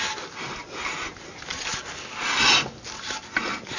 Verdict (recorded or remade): recorded